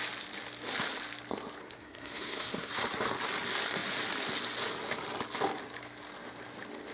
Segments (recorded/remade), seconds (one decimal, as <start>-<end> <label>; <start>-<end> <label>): 0.0-1.6 recorded; 1.6-2.7 remade; 2.7-6.9 recorded

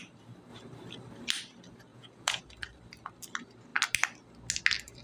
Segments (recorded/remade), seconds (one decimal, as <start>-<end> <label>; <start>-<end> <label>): 0.0-1.9 recorded; 1.9-2.4 remade; 2.4-5.0 recorded

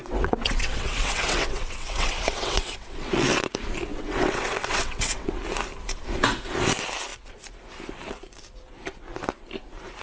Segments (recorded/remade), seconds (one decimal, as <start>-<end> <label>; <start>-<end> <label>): 0.0-3.5 remade; 3.5-3.9 recorded; 3.9-5.4 remade; 5.4-10.0 recorded

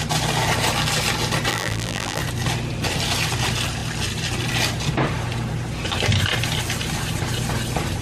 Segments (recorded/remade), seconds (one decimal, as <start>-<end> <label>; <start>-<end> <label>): 0.0-1.5 recorded; 1.5-2.2 remade; 2.2-8.0 recorded

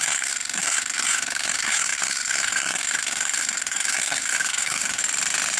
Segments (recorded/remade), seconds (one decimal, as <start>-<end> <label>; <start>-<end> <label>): 0.0-5.0 remade; 5.0-5.6 recorded

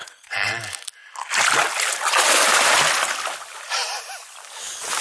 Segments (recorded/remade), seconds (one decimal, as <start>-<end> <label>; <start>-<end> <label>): 0.0-0.6 remade; 0.6-5.0 recorded

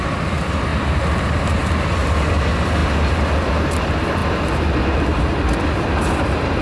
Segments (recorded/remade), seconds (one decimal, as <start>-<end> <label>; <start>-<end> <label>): 0.0-0.7 remade; 0.7-1.2 recorded; 1.2-6.6 remade

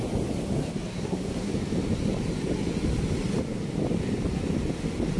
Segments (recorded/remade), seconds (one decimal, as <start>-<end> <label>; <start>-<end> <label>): 0.0-0.9 recorded; 0.9-1.5 remade; 1.5-5.2 recorded